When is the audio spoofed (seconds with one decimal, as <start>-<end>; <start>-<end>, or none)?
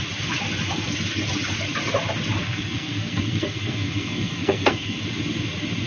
2.4-5.0